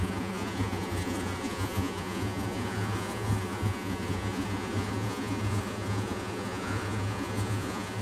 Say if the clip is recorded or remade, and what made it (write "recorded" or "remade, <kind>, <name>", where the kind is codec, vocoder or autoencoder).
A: remade, vocoder, Vocos